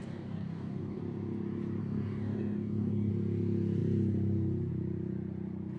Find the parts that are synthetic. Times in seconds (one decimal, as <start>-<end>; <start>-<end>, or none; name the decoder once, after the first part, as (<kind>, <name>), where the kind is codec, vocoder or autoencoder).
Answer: 0.0-1.0 (codec, DAC); 1.8-3.1